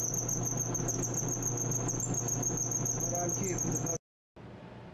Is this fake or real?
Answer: real